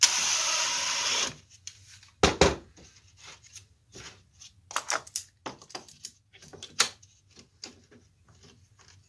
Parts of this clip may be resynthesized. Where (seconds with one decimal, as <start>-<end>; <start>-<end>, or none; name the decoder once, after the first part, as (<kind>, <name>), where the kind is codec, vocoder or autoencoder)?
none